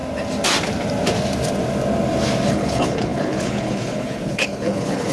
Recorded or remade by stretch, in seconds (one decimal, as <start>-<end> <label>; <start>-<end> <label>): 0.0-2.5 recorded; 2.5-5.1 remade